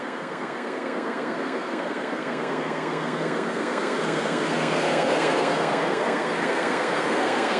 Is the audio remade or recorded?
remade